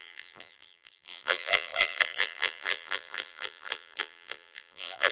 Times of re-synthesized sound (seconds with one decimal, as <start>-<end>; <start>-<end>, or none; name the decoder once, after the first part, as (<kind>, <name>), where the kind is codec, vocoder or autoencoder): 0.0-5.1 (vocoder, BigVGAN v2)